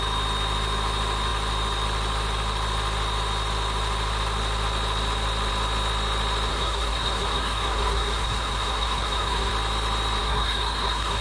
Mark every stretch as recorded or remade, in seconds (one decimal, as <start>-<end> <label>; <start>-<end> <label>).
0.0-6.5 recorded; 6.5-9.5 remade; 9.5-10.2 recorded; 10.2-11.2 remade